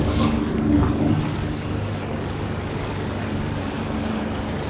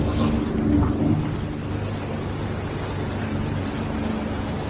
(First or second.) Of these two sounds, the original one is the second